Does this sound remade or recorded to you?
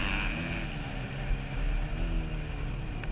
recorded